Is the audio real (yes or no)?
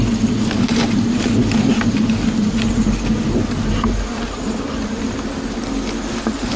yes